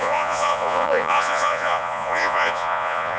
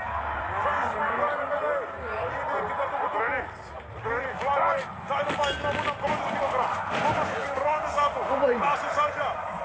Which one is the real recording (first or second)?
second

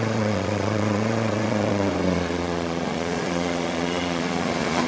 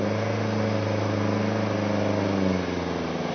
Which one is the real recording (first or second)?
second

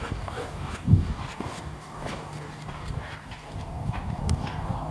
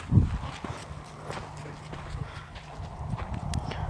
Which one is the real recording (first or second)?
second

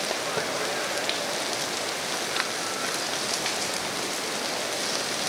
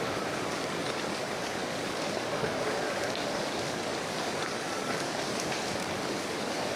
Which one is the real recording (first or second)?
first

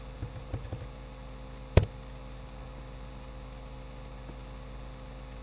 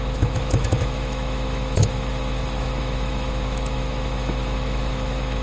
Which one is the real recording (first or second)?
first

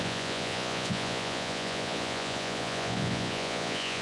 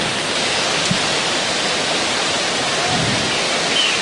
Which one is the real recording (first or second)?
second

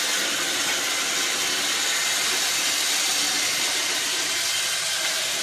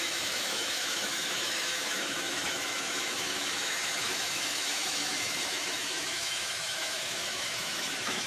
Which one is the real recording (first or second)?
first